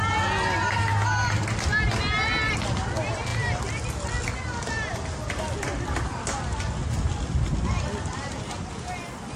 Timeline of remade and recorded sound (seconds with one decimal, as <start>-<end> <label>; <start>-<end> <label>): 0.0-9.4 recorded